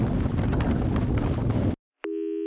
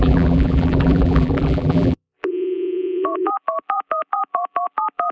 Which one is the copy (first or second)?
second